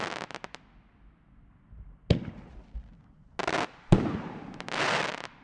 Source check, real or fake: real